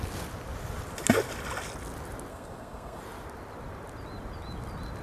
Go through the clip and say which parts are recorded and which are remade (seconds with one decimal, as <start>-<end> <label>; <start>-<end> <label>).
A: 0.0-2.3 recorded; 2.3-3.0 remade; 3.0-5.0 recorded